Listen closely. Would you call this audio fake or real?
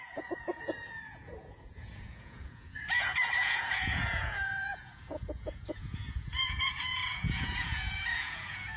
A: fake